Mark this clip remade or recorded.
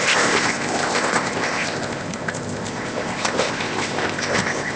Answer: remade